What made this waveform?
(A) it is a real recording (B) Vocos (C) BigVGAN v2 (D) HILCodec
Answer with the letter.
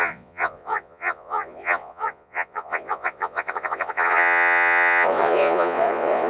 B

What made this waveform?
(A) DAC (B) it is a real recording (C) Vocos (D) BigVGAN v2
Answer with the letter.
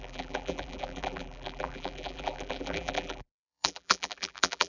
D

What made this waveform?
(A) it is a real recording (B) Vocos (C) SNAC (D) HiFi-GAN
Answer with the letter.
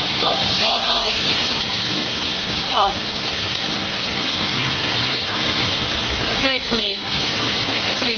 C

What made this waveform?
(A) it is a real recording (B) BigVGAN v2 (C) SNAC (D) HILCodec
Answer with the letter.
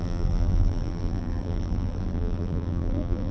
B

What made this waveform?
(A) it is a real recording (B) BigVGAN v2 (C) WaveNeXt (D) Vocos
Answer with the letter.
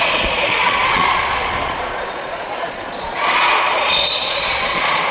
D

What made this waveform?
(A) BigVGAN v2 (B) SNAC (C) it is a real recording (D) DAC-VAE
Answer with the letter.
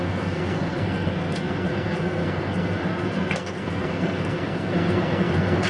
B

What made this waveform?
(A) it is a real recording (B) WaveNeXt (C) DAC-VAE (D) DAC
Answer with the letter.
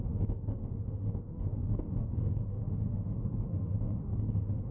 C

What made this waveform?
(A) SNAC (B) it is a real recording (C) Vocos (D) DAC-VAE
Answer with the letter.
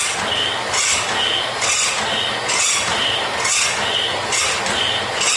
B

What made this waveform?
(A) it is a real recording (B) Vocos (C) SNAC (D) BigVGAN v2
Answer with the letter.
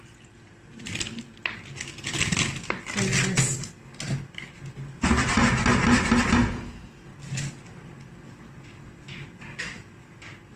A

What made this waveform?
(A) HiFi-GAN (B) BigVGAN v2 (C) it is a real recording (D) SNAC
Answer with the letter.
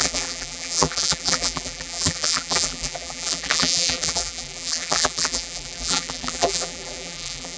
B